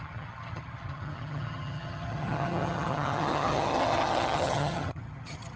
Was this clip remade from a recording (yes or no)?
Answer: yes